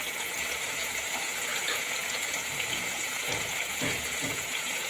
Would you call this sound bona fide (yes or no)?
no